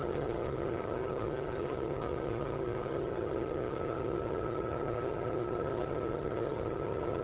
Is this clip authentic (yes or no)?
no